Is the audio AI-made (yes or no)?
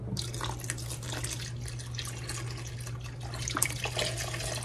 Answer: no